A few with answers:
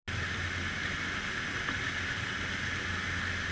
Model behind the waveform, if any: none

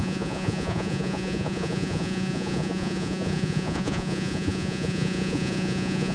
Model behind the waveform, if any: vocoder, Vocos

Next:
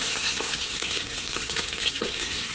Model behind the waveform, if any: codec, SNAC